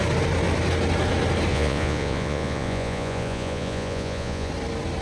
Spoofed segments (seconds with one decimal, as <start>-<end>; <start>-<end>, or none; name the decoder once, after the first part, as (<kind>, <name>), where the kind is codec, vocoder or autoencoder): 1.5-4.5 (vocoder, Vocos)